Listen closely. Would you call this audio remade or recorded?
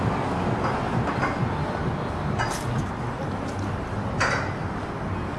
recorded